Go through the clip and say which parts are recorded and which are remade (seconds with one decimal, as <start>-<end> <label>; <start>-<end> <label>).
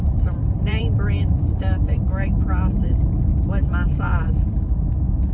0.0-3.2 remade; 3.2-3.6 recorded; 3.6-4.6 remade; 4.6-5.3 recorded